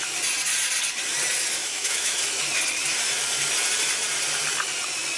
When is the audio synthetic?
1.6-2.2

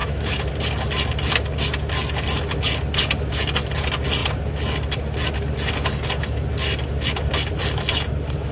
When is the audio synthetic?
0.0-0.5

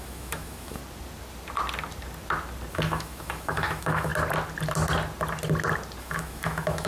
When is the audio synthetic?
0.0-0.8; 2.7-4.1; 6.0-6.9